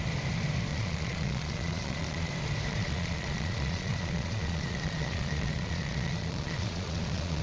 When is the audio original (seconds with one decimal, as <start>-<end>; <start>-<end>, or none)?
0.0-0.7; 2.3-2.7